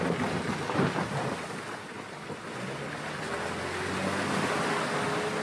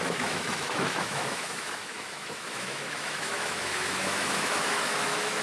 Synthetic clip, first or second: second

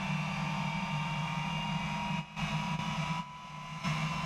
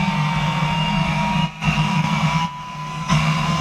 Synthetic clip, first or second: second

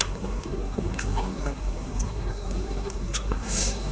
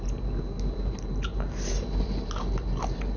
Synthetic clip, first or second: first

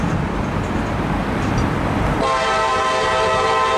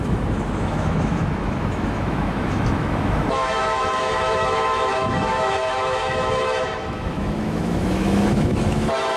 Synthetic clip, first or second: second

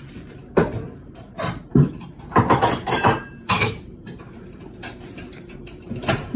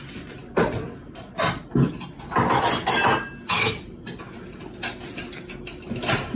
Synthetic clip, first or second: first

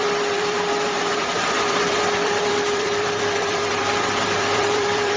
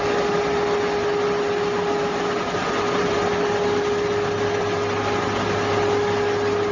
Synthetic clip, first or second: first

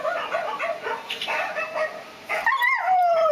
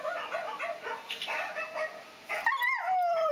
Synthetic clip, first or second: first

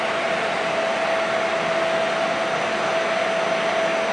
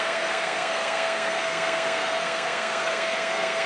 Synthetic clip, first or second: second